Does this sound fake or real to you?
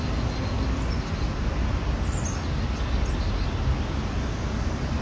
real